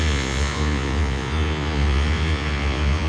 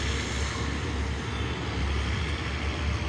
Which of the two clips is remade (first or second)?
first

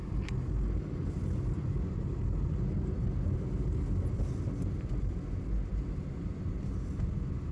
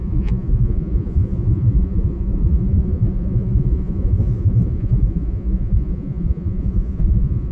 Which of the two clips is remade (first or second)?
second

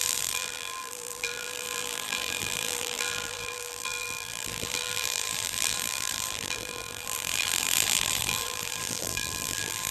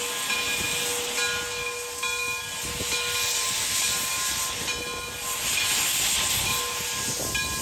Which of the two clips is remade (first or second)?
first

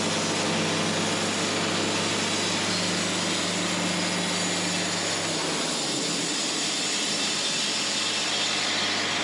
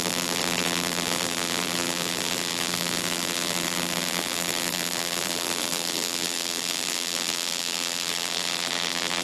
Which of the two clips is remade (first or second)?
second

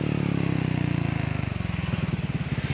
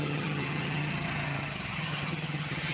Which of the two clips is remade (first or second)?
second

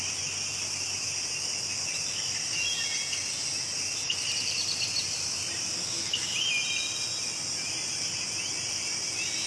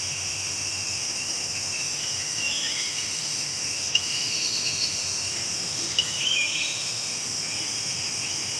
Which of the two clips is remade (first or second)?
second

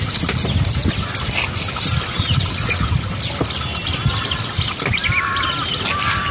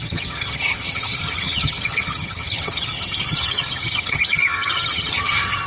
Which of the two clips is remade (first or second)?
second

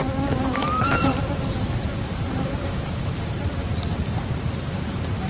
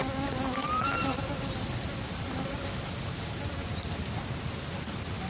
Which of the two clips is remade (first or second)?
first